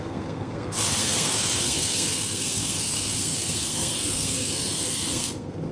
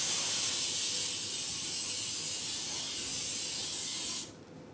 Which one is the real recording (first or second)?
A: second